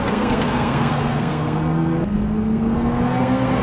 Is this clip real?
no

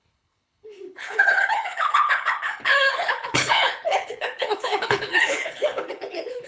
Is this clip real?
no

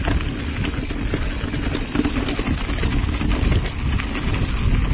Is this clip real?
yes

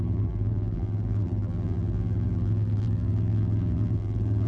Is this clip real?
no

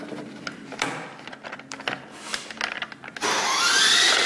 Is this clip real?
yes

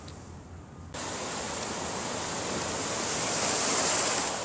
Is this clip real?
yes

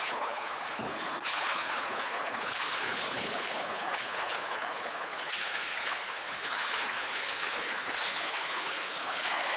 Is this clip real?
no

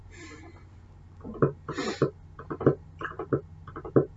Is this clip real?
yes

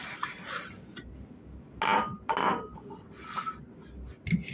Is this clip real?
yes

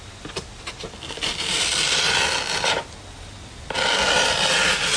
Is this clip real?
yes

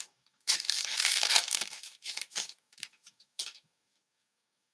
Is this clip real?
no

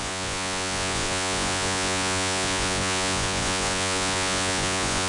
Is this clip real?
no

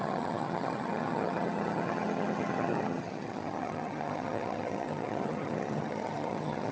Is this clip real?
no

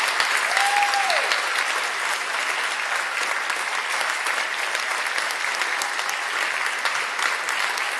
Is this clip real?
yes